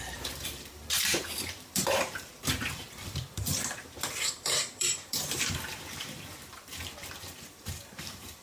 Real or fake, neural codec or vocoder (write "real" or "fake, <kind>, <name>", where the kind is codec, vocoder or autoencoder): fake, vocoder, BigVGAN v2